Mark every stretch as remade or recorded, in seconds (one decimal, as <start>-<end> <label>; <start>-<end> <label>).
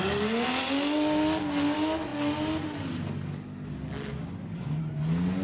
0.0-5.4 recorded